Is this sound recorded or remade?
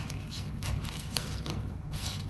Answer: remade